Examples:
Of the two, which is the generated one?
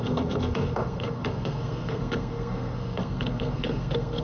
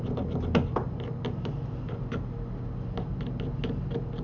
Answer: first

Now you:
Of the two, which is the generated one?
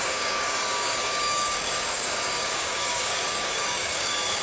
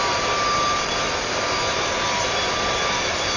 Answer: first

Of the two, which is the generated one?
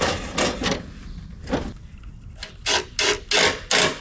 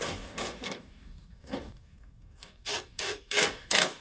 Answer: second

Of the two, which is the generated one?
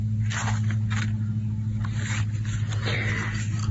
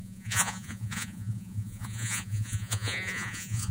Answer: second